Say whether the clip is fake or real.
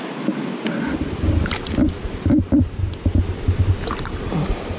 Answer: real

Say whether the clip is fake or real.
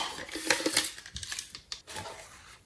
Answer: real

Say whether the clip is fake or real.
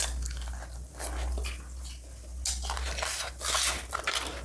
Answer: real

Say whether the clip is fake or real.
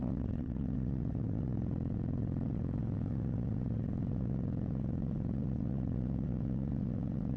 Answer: fake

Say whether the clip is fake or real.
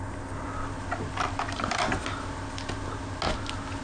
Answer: real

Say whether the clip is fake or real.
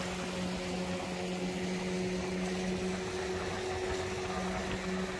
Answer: real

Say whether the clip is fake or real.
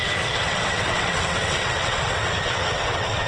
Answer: fake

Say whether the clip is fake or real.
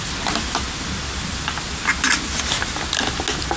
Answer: real